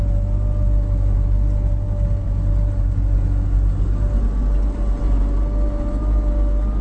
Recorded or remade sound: recorded